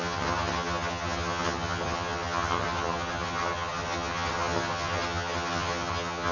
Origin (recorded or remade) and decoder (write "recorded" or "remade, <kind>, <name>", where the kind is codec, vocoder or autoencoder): remade, vocoder, HiFi-GAN